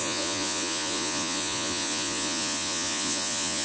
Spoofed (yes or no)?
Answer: yes